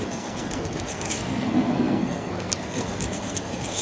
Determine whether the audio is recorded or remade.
remade